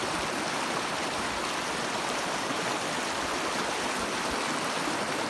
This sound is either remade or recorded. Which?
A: recorded